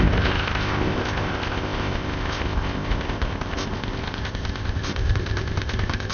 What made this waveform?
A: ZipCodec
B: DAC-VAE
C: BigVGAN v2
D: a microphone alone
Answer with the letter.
A